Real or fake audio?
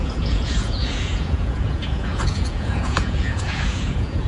fake